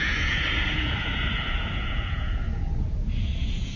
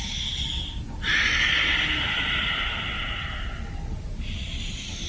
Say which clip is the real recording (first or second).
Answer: second